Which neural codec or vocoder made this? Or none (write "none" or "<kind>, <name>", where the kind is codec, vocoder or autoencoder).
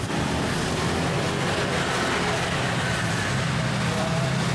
none